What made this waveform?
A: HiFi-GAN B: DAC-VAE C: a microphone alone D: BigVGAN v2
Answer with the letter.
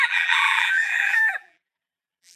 D